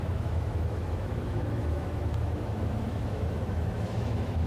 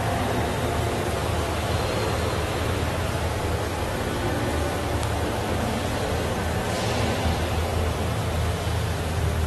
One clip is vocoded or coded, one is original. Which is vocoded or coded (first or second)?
first